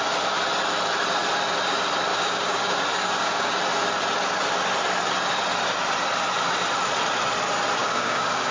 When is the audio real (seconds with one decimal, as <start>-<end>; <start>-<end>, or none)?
0.0-2.1; 3.6-7.8

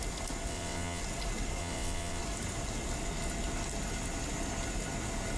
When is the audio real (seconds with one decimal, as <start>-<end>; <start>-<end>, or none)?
0.0-0.5; 1.0-1.6; 2.2-5.4

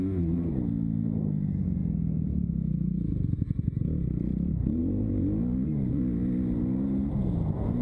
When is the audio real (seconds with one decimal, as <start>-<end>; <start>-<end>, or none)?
0.0-7.8

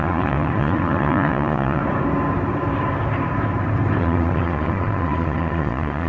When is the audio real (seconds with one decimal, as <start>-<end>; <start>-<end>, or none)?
1.8-4.0